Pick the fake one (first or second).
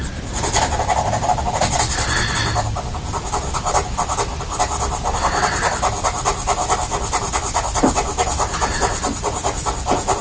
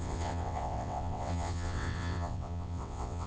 second